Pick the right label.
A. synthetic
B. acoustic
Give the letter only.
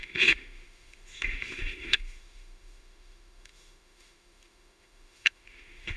A